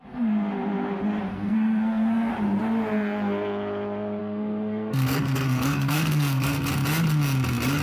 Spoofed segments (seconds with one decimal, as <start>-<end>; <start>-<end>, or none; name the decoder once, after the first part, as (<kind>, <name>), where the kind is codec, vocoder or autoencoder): 1.3-2.3 (codec, SNAC); 4.2-6.7